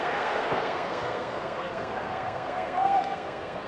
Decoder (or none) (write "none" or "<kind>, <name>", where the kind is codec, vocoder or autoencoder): codec, SNAC